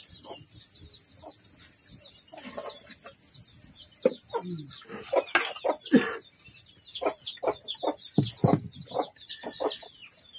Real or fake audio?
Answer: real